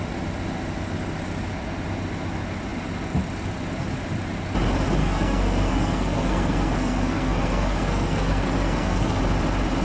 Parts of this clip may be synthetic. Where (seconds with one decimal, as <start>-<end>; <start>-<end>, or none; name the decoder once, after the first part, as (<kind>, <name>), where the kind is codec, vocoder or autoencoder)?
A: 5.0-9.2 (codec, SNAC)